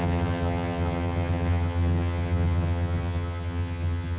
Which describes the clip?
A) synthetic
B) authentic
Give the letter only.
A